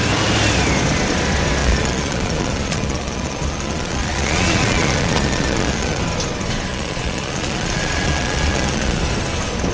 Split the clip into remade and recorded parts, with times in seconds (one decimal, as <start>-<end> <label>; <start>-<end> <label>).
0.0-1.6 recorded; 1.6-6.0 remade; 6.0-6.7 recorded; 6.7-9.0 remade; 9.0-9.7 recorded